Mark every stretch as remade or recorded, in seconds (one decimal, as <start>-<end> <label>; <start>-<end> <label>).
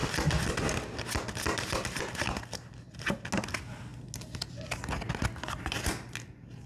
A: 0.0-6.7 recorded